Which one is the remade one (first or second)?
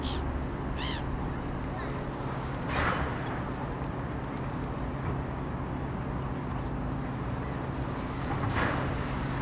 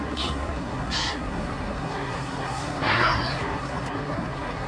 second